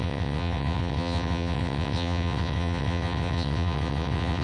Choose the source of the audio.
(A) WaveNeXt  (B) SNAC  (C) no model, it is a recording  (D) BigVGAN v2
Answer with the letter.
A